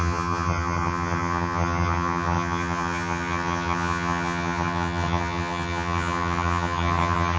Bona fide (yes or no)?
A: no